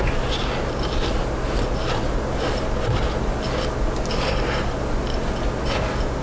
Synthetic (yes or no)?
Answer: no